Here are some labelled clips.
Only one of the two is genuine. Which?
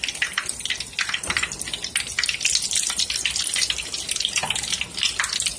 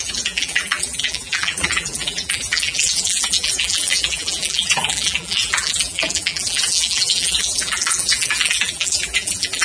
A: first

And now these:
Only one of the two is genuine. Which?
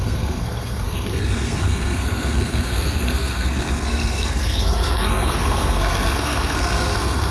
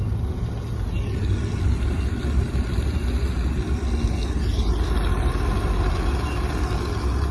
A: second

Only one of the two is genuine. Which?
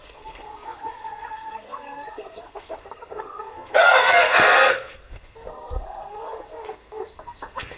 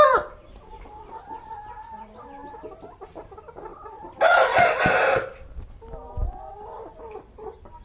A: second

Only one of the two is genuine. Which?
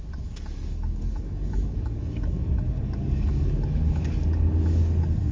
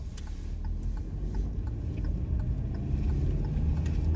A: second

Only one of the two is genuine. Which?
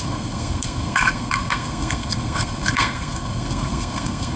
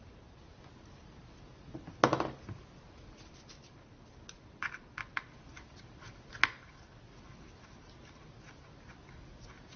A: second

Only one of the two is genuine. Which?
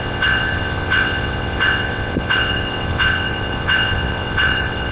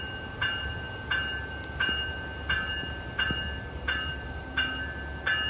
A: second